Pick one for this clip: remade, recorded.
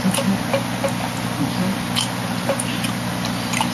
recorded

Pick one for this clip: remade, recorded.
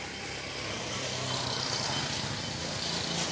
recorded